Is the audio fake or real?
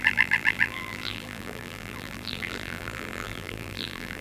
fake